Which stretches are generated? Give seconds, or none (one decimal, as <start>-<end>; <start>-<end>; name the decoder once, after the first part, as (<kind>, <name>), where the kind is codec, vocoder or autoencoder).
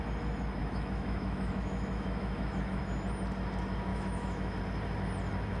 0.6-2.8 (autoencoder, DAC-VAE); 3.9-4.6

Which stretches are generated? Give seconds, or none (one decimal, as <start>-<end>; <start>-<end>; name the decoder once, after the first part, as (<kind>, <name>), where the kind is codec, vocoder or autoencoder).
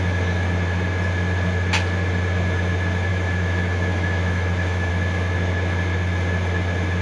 3.1-4.9 (autoencoder, DAC-VAE)